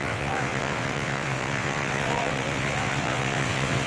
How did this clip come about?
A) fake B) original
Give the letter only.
A